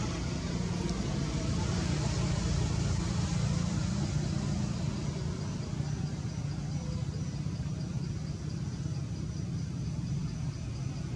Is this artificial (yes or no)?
no